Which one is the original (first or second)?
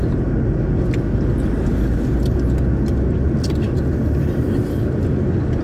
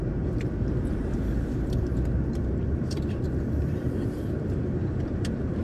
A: first